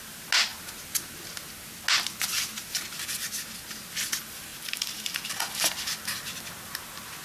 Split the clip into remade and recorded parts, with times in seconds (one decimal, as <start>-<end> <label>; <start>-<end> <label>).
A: 0.0-4.5 recorded; 4.5-5.3 remade; 5.3-7.2 recorded